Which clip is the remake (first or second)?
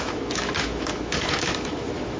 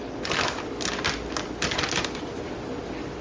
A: first